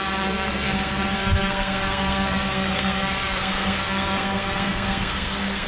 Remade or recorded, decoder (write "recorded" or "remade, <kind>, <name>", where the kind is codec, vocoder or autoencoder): remade, codec, SNAC